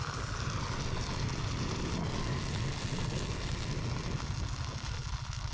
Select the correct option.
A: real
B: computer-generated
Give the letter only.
A